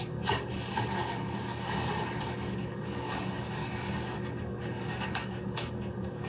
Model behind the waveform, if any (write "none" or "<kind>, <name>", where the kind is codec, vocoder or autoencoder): codec, DAC